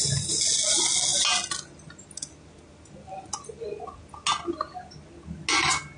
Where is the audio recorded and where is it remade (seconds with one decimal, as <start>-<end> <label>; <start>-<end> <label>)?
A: 0.0-6.0 recorded